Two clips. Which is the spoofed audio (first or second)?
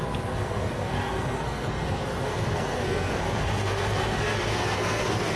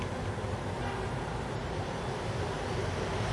first